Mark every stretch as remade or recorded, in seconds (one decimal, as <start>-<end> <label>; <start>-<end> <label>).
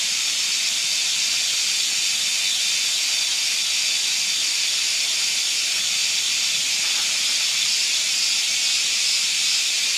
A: 0.0-0.8 remade; 0.8-4.5 recorded; 4.5-10.0 remade